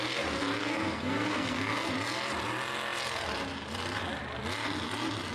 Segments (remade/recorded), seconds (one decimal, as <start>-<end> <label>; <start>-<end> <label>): 0.0-0.6 recorded; 0.6-1.9 remade; 1.9-5.3 recorded